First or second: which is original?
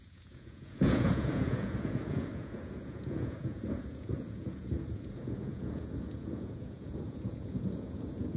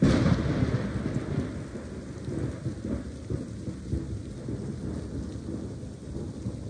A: second